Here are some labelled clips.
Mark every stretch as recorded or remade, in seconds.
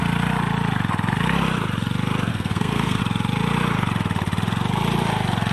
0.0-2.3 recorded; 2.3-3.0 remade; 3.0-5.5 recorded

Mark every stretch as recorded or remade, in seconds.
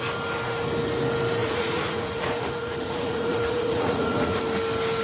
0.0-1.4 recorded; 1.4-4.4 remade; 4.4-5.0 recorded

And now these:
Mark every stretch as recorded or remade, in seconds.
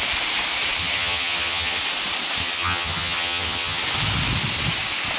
0.0-0.8 recorded; 0.8-1.8 remade; 1.8-2.4 recorded; 2.4-3.8 remade; 3.8-5.2 recorded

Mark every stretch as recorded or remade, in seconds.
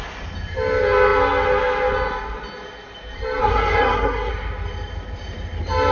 0.0-3.4 recorded; 3.4-4.3 remade; 4.3-5.9 recorded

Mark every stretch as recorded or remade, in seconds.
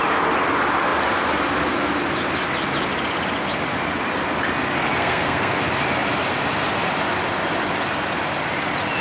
0.0-5.0 recorded; 5.0-5.6 remade; 5.6-9.0 recorded